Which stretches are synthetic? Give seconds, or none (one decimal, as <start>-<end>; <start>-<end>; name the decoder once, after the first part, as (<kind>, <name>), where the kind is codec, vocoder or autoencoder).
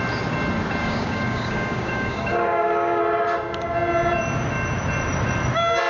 0.8-3.0 (codec, DAC)